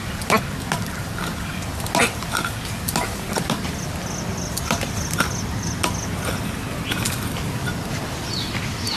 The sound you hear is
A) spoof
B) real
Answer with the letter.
B